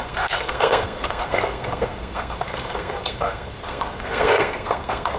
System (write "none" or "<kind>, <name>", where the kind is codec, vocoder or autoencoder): codec, SNAC